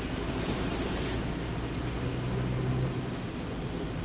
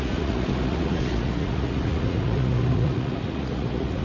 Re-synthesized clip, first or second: second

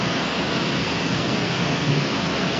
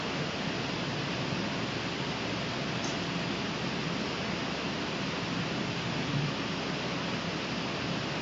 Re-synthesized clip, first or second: first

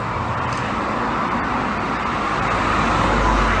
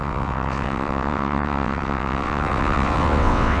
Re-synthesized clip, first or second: second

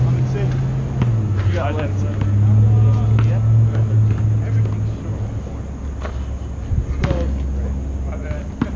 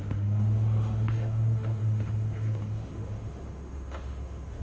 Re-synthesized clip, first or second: second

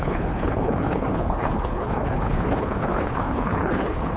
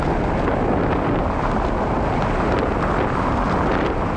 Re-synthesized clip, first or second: first